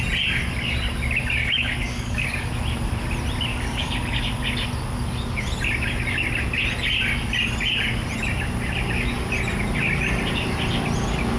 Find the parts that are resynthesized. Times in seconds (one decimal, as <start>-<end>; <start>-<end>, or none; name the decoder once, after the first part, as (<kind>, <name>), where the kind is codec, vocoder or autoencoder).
1.4-2.5 (codec, DAC); 3.5-4.2